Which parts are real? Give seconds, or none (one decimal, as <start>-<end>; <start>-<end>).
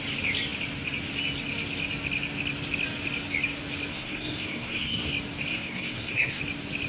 0.0-3.9; 5.1-5.5; 6.4-6.9